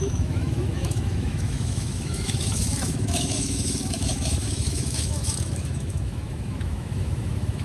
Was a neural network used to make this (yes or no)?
yes